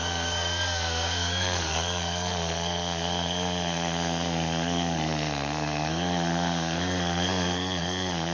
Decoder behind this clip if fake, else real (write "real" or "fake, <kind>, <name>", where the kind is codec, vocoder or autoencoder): fake, codec, SNAC